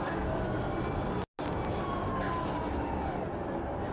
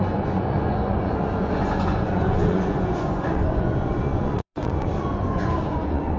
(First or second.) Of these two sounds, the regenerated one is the second